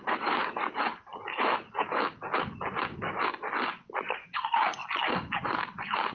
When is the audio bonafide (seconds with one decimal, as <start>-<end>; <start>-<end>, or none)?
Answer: 1.1-4.0; 4.8-6.1

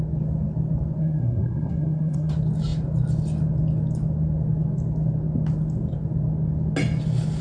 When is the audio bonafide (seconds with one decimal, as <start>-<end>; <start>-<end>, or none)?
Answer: 0.0-1.0; 2.3-7.4

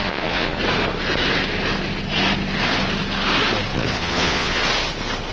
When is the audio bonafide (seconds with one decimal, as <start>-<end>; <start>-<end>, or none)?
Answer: 0.6-3.7; 4.6-5.3

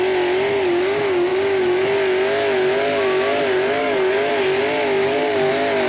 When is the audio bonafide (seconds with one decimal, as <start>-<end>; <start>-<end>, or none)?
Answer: 0.0-3.8; 4.3-5.0; 5.5-5.9

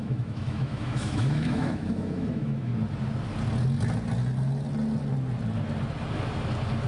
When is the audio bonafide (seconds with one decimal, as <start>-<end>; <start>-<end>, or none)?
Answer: 2.7-6.9

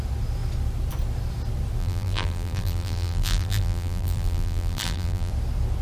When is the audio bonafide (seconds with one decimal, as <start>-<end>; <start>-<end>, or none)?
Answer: 0.0-1.8; 5.3-5.8